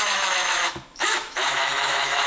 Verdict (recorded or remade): remade